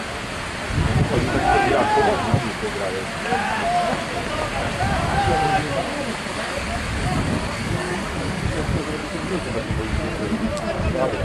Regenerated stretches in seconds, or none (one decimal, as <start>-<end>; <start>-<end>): 6.3-10.1